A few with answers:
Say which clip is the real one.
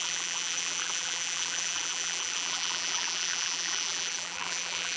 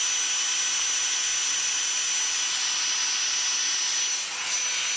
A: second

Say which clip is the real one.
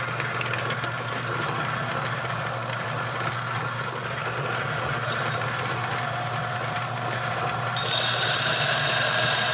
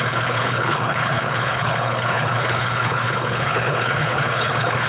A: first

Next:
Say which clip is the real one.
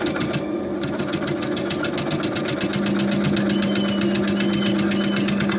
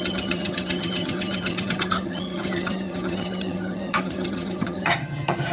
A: first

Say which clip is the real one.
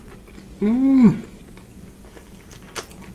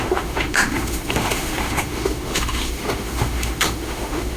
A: first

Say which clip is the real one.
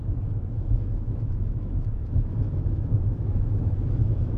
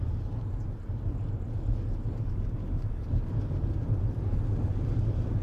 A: second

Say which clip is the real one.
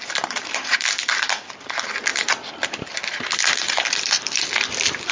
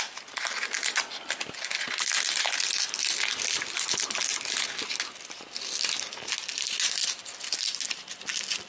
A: second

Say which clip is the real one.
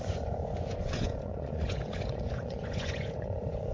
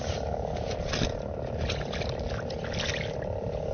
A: second